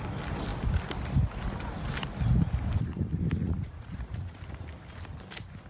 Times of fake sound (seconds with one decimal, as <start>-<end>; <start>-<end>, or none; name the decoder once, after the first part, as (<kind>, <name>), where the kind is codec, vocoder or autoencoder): 3.4-4.4 (vocoder, Vocos)